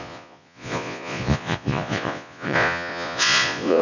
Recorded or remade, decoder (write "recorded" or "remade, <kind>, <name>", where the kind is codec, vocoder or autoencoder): remade, vocoder, Vocos